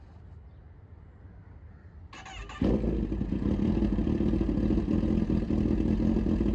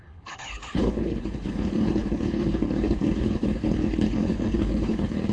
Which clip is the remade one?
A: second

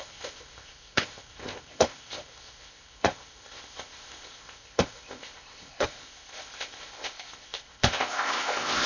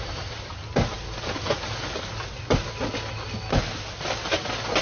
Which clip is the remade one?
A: first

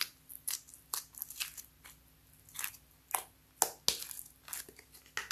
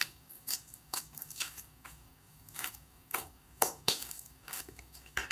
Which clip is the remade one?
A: second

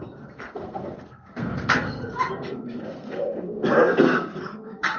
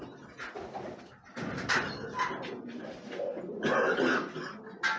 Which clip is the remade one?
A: first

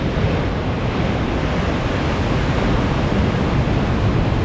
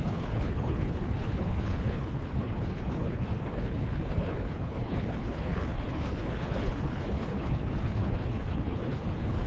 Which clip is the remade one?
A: second